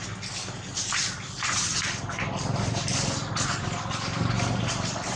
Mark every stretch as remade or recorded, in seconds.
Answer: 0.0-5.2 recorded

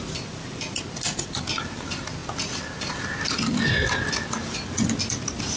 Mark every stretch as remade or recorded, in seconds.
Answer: 0.0-5.6 recorded